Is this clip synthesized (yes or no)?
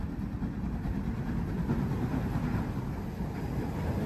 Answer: no